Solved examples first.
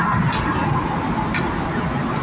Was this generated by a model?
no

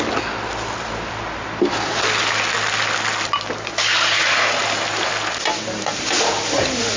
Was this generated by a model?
no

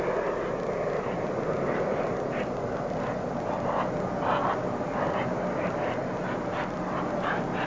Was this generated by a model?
no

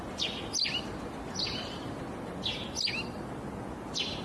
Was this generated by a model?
no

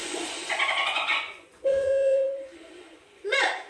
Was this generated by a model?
yes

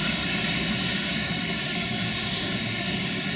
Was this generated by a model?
yes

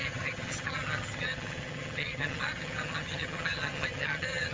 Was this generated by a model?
yes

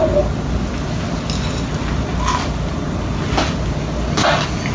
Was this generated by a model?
no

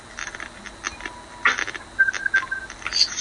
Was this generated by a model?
no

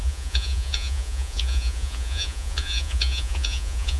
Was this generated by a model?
yes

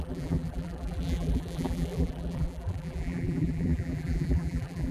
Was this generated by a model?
yes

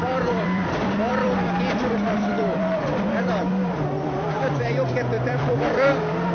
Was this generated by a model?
yes